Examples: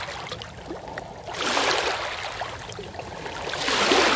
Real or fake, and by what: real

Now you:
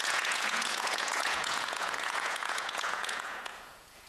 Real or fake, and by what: fake, vocoder, Vocos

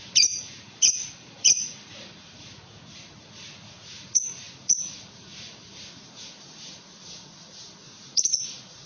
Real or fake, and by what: fake, vocoder, Vocos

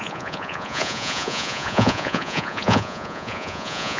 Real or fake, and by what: fake, vocoder, Vocos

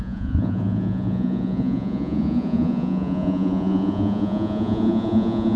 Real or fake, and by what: fake, vocoder, Vocos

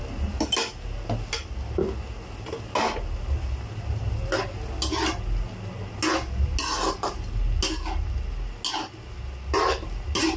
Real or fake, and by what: real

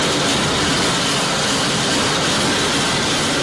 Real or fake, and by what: real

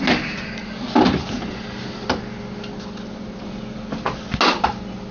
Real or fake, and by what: real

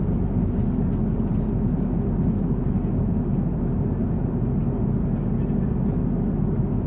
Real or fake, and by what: real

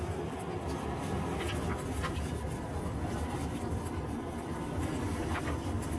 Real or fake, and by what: real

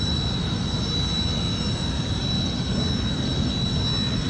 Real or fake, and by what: real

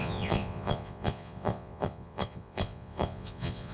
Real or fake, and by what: fake, vocoder, Vocos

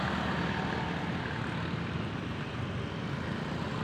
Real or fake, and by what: real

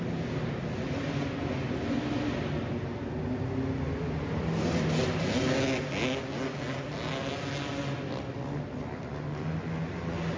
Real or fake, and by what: real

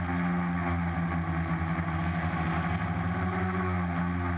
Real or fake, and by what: real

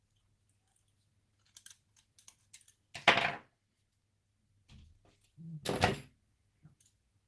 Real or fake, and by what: real